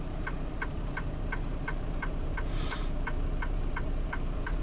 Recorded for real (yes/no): no